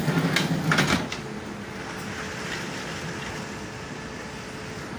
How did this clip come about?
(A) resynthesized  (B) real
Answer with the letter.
B